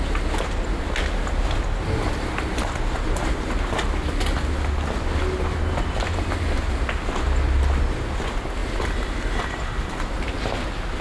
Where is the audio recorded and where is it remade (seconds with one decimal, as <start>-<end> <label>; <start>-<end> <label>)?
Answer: 0.0-11.0 recorded